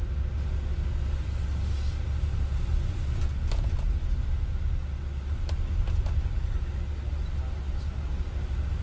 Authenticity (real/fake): real